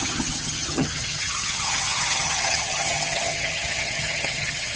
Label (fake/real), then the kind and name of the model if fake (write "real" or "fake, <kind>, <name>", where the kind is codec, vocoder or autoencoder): fake, vocoder, HiFi-GAN